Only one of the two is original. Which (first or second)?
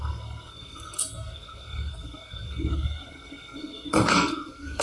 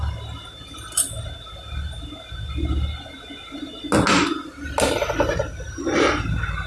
second